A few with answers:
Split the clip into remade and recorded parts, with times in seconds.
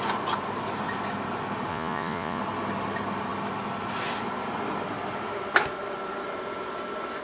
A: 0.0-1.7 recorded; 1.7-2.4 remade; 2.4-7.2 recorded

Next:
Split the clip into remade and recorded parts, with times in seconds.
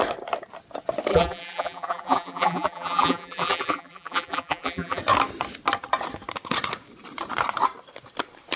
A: 0.0-1.1 recorded; 1.1-5.0 remade; 5.0-8.6 recorded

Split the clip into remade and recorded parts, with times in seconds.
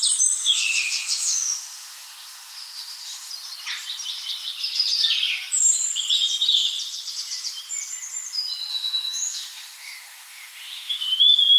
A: 0.0-0.4 recorded; 0.4-3.3 remade; 3.3-8.7 recorded; 8.7-11.2 remade; 11.2-11.6 recorded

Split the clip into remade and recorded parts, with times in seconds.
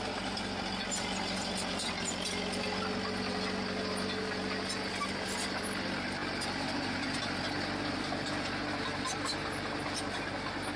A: 0.0-10.8 recorded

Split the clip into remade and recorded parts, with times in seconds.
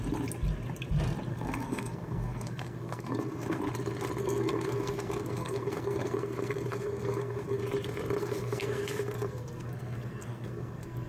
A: 0.0-1.3 recorded; 1.3-3.6 remade; 3.6-4.2 recorded; 4.2-7.6 remade; 7.6-8.2 recorded; 8.2-11.1 remade